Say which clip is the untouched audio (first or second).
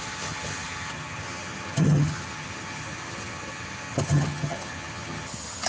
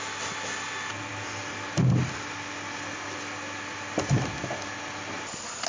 second